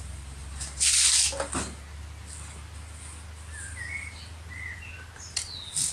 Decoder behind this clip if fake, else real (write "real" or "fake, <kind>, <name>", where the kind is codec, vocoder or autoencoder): real